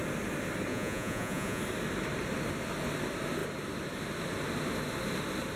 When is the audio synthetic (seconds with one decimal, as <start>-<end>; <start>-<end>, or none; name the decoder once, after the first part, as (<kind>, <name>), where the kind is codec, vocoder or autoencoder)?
0.7-1.6 (vocoder, Vocos)